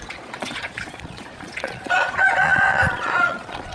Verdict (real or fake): fake